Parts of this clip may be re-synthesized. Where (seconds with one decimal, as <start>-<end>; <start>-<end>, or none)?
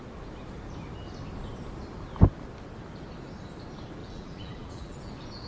4.0-5.1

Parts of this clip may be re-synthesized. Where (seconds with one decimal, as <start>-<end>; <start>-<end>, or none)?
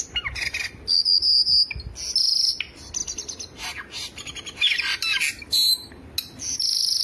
none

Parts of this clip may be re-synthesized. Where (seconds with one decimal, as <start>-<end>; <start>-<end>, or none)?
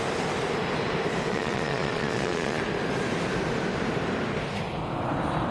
1.3-2.6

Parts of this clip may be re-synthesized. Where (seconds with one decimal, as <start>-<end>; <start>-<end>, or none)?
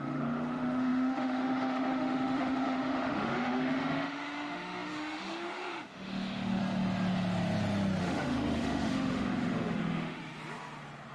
0.0-6.6; 8.0-10.2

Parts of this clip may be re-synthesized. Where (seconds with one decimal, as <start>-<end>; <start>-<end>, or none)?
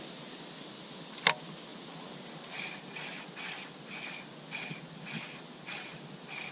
none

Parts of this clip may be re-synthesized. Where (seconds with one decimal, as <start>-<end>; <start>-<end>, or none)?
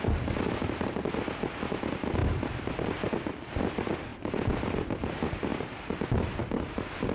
2.2-3.6; 4.1-5.1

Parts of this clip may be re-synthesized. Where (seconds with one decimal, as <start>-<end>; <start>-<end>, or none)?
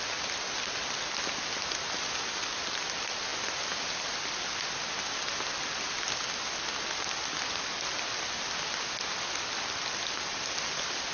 none